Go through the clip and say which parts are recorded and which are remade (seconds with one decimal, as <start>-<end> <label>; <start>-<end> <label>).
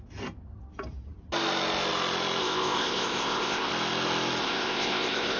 0.0-2.4 recorded; 2.4-3.7 remade; 3.7-4.4 recorded; 4.4-5.4 remade